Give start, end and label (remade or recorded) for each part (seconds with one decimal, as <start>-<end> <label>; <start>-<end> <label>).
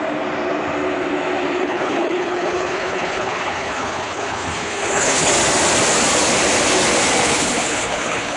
0.0-1.6 recorded; 1.6-5.3 remade; 5.3-7.2 recorded; 7.2-8.4 remade